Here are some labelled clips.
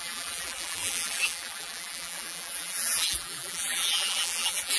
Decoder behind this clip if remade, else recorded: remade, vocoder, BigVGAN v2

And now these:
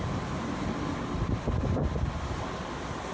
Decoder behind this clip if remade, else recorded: recorded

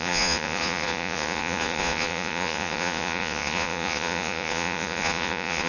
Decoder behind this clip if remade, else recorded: remade, vocoder, Vocos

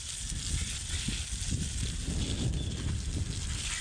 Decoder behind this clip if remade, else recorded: recorded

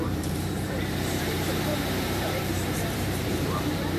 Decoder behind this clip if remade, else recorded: remade, vocoder, BigVGAN v2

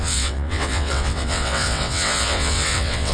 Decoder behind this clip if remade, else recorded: remade, vocoder, WaveNeXt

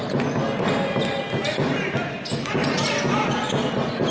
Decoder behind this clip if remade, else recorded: recorded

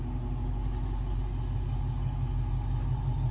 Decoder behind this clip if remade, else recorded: recorded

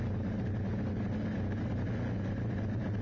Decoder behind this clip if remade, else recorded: recorded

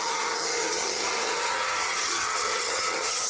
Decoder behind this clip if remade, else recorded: remade, vocoder, HiFi-GAN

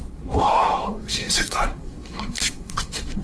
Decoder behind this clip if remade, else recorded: remade, codec, SNAC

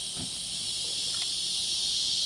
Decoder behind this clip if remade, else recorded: recorded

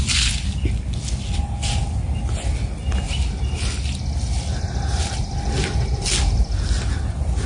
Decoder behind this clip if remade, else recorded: recorded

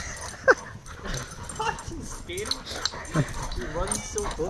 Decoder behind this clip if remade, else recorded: recorded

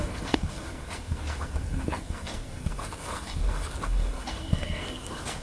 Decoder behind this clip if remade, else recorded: remade, codec, SNAC